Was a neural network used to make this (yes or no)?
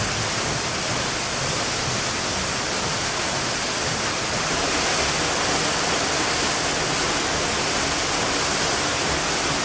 no